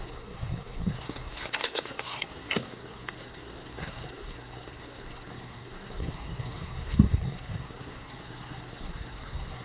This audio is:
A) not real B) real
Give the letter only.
A